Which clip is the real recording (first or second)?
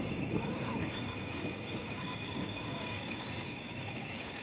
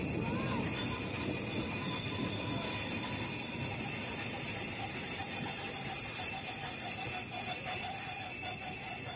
second